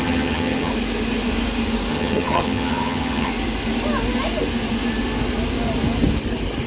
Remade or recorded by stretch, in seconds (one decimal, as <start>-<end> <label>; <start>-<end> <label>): 0.0-0.7 remade; 0.7-1.9 recorded; 1.9-3.3 remade; 3.3-6.7 recorded